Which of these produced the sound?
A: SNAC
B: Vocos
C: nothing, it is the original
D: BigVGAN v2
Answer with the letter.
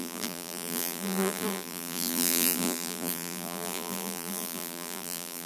D